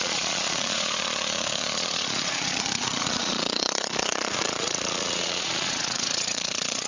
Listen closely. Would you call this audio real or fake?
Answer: fake